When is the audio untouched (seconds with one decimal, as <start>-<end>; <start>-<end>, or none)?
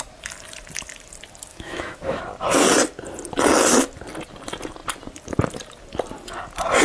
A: 0.0-1.5; 2.2-6.8